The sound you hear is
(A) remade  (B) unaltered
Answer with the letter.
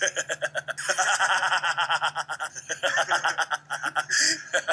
B